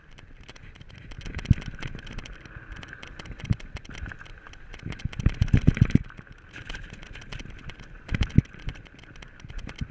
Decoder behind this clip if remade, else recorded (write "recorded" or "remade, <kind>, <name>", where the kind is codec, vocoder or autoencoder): recorded